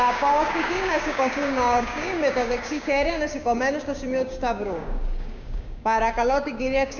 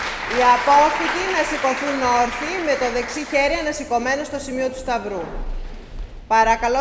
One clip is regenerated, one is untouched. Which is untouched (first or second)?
second